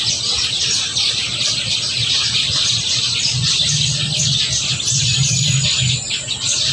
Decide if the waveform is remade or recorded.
recorded